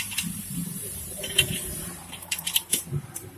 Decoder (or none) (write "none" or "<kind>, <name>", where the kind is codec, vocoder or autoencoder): vocoder, BigVGAN v2